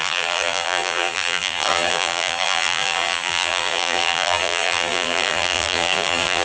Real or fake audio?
fake